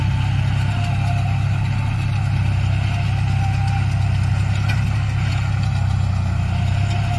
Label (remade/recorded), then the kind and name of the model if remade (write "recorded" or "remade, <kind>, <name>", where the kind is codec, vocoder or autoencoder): recorded